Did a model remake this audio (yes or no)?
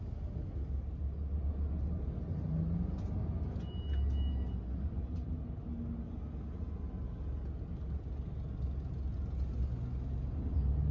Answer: no